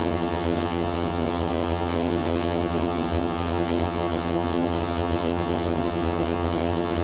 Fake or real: fake